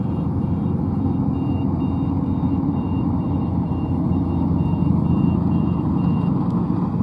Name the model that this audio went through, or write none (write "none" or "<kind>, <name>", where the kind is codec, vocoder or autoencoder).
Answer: none